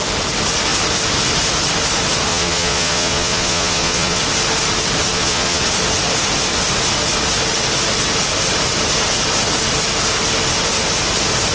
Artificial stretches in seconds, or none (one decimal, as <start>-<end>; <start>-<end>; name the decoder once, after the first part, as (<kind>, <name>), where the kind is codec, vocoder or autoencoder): 2.3-4.2 (vocoder, Vocos); 5.1-5.6